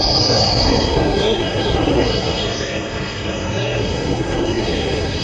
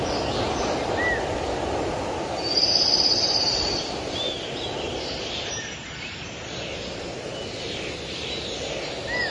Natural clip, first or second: second